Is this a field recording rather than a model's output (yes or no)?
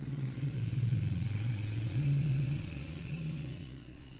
no